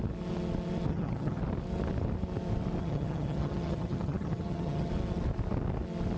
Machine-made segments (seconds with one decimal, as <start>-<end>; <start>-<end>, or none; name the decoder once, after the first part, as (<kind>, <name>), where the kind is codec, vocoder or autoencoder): 0.9-1.4 (vocoder, HiFi-GAN); 2.8-4.9